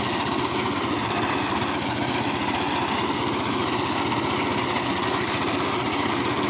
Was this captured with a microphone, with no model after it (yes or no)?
yes